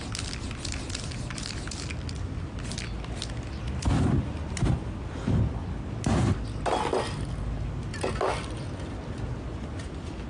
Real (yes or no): yes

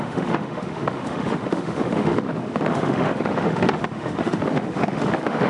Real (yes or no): no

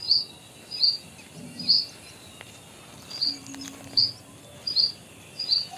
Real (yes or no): yes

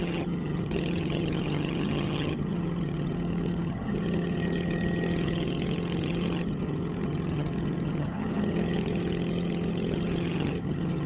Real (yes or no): no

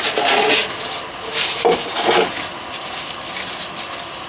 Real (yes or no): yes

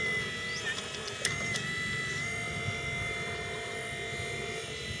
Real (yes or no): yes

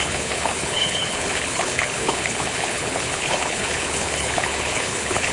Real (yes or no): no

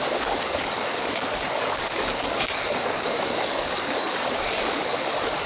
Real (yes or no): no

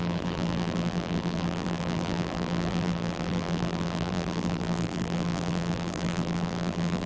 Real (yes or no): no